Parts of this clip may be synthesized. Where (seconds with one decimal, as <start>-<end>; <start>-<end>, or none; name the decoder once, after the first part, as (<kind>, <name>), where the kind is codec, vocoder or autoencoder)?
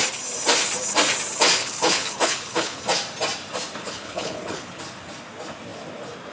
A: 1.6-2.8 (codec, HILCodec); 3.8-4.8